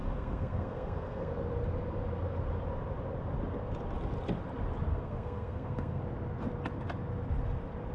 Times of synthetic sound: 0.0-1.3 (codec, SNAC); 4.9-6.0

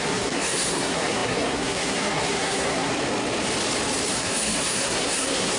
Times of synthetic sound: 0.0-2.9 (codec, SNAC); 4.1-5.6

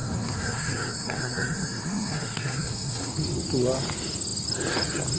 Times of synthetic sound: 0.0-3.1 (codec, SNAC)